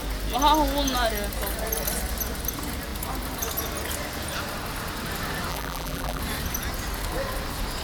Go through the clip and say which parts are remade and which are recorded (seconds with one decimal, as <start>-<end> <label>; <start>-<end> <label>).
0.0-5.5 recorded; 5.5-6.2 remade; 6.2-7.8 recorded